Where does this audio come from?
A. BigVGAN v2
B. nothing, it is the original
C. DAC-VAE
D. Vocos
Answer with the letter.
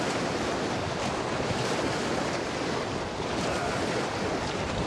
B